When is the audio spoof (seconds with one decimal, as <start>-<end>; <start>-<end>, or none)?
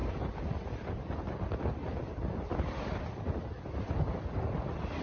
none